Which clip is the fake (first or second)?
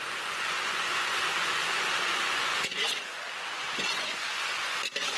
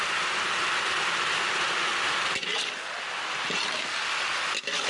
first